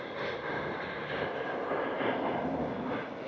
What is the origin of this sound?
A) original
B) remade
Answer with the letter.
A